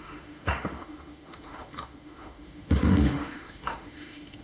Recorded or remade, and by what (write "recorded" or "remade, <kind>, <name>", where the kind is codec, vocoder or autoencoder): remade, autoencoder, DAC-VAE